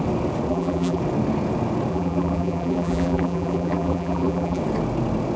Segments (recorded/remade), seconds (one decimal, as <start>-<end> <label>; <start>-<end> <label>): 0.0-0.5 recorded; 0.5-1.0 remade; 1.0-1.9 recorded; 1.9-4.6 remade; 4.6-5.4 recorded